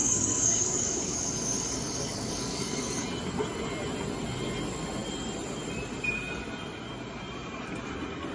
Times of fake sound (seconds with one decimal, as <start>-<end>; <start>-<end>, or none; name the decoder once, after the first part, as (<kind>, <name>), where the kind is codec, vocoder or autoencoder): 0.0-2.8 (codec, DAC)